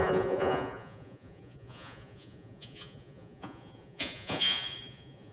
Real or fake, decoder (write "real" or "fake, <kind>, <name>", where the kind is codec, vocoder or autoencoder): fake, vocoder, Vocos